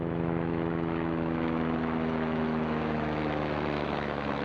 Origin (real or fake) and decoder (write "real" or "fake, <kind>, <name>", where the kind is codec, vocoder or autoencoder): fake, autoencoder, DAC-VAE